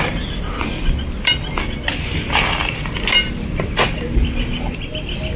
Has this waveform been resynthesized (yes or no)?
no